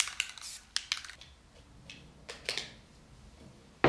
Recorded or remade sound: recorded